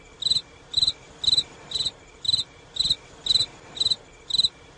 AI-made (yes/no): no